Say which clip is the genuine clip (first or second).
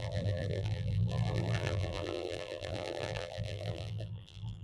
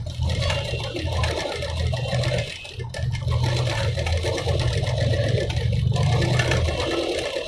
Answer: second